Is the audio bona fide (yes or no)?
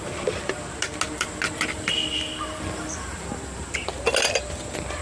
yes